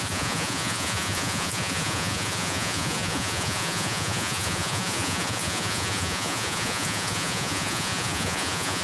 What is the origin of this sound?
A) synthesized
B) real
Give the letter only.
A